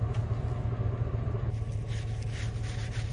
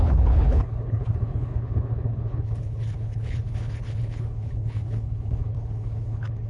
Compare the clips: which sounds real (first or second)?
first